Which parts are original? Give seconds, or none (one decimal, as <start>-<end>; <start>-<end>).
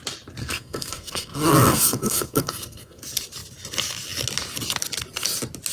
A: 0.0-0.4; 3.0-5.7